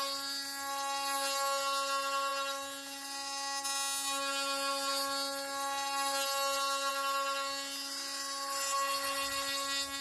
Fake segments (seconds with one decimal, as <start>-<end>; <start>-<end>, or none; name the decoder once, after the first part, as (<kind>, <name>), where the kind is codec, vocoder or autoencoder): none